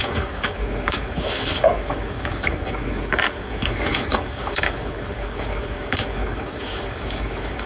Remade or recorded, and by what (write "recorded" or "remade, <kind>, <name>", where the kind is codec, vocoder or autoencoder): remade, codec, DAC